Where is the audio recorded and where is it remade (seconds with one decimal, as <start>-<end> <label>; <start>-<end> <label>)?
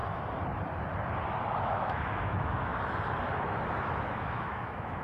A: 0.0-1.6 recorded; 1.6-2.7 remade; 2.7-3.8 recorded; 3.8-5.0 remade